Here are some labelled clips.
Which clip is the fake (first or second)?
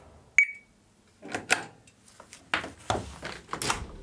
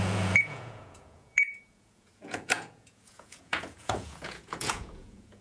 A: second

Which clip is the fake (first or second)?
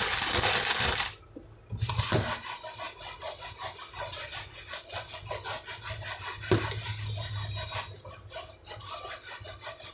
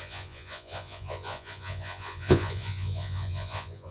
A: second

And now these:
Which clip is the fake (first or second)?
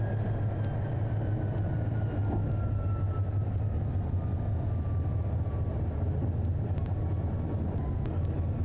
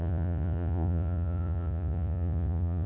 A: second